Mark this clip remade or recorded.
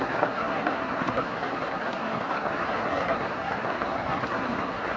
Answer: remade